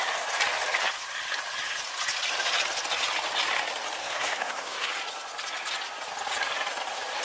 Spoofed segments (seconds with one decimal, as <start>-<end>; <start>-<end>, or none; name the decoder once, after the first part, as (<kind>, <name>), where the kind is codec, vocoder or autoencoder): 4.0-4.9 (codec, SNAC)